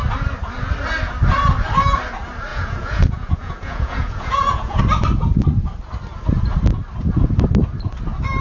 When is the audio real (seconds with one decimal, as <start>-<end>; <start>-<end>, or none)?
0.0-2.5; 4.8-8.4